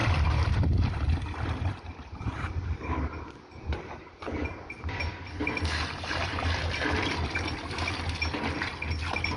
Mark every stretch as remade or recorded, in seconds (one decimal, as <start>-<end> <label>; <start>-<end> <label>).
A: 0.0-3.0 remade; 3.0-9.4 recorded